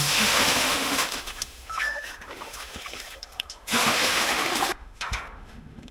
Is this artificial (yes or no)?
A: yes